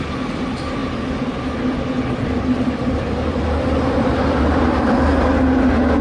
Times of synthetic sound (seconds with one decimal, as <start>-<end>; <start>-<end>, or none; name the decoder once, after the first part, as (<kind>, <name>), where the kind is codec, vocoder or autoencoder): 0.8-4.4 (vocoder, BigVGAN v2)